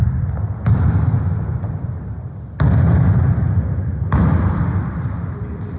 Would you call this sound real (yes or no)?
yes